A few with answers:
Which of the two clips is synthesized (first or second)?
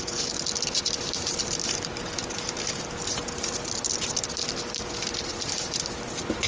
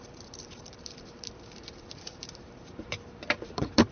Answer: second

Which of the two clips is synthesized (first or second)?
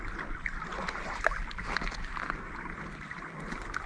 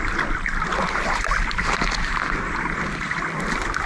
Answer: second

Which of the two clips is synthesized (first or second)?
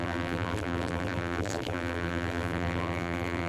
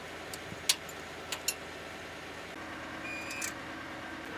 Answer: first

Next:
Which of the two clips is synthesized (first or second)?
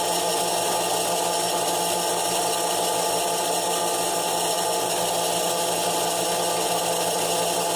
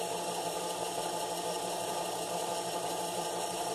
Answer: second